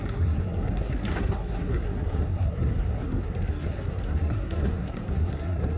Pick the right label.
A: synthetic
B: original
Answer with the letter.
A